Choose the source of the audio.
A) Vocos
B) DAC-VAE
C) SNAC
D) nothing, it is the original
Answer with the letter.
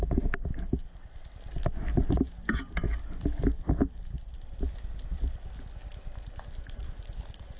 D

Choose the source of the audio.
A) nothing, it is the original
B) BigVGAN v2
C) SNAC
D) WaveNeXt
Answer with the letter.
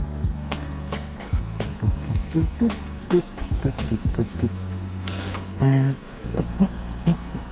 C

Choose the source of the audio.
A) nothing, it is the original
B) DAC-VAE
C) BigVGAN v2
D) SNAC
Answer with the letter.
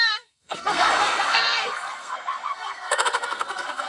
D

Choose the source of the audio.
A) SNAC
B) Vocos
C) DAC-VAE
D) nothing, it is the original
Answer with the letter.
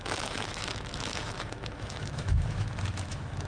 C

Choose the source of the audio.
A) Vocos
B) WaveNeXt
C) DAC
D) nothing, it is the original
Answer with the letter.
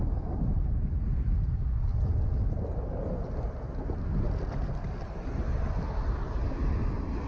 D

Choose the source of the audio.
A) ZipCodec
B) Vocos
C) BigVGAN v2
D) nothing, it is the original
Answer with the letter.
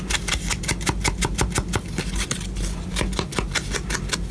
D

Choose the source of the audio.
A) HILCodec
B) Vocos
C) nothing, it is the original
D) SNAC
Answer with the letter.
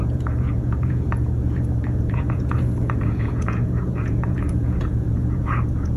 B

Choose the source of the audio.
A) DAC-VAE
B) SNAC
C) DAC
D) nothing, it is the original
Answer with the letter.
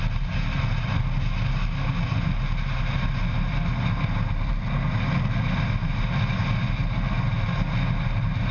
D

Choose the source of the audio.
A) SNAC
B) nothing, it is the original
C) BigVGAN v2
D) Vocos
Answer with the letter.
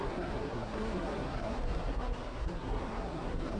A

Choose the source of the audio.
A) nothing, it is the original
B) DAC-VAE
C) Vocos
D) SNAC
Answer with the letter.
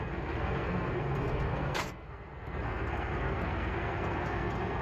D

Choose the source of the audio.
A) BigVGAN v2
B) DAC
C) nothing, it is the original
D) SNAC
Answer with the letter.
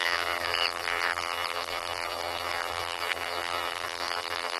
A